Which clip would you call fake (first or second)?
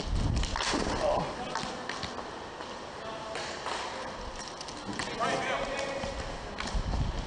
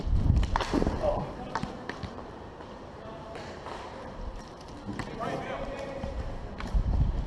second